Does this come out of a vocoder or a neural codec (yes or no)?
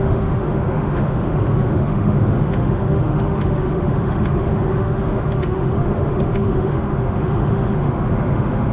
yes